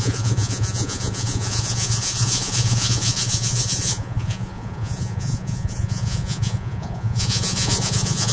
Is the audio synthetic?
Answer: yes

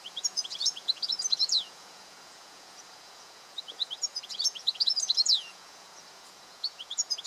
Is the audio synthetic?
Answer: yes